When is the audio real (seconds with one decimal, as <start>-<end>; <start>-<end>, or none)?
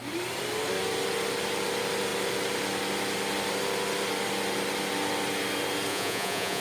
0.0-5.9